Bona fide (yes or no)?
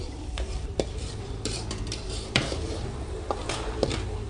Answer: no